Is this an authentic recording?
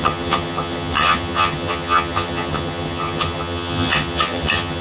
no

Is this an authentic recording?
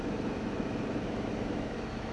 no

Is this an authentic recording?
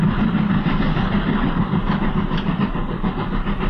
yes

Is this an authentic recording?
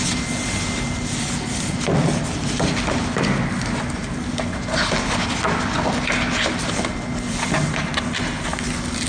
yes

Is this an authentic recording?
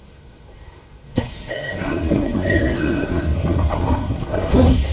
no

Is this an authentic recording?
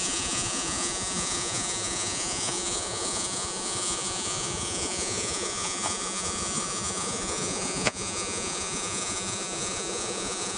no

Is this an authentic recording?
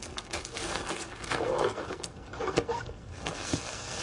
no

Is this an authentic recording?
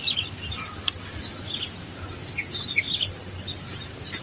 yes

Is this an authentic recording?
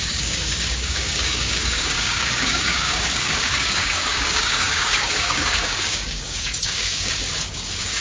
no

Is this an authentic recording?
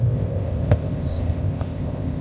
no